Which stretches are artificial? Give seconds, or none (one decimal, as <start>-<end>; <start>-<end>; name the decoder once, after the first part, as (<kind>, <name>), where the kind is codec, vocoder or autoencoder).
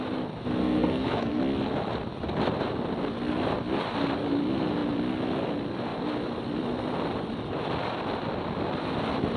0.6-1.4 (codec, SNAC)